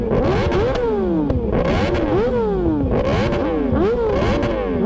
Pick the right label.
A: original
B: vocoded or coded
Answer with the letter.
A